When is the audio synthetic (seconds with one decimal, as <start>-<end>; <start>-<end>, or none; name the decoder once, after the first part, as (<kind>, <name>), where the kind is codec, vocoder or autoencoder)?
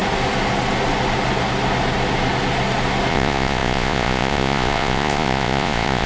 3.1-6.1 (vocoder, Vocos)